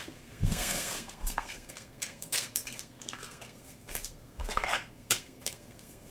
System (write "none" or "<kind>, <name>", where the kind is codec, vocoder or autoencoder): codec, SNAC